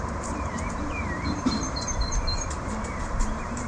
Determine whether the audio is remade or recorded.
remade